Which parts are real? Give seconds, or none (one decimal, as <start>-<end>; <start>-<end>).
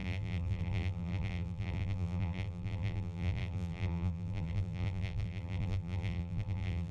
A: none